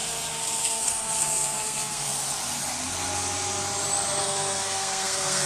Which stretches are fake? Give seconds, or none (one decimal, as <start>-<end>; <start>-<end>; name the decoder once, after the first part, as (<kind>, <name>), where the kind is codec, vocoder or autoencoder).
0.6-2.2 (codec, SNAC); 4.2-5.5

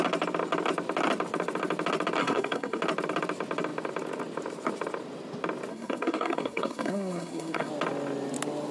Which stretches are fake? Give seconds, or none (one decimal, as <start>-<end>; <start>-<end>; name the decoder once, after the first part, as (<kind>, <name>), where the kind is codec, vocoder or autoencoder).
2.2-2.8 (codec, SNAC); 5.7-7.7

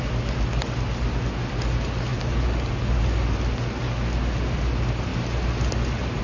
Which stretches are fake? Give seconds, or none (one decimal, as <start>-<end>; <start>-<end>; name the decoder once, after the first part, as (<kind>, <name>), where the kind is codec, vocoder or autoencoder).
none

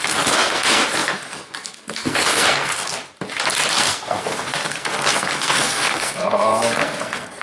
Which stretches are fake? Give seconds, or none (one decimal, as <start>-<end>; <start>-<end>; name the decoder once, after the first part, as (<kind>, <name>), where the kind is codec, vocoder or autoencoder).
0.0-3.0 (codec, SNAC); 3.7-7.4

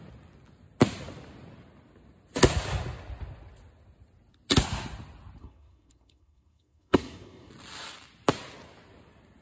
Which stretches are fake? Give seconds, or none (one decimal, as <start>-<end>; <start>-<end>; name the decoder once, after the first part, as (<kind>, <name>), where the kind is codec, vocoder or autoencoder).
5.4-7.5 (codec, SNAC)

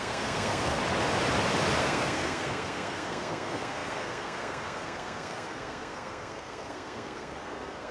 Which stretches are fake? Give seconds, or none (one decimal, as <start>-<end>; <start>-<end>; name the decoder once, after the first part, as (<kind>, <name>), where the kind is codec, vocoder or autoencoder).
0.0-0.8 (codec, SNAC); 1.8-7.9